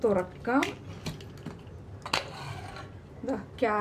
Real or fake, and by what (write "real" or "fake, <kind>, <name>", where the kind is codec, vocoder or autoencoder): real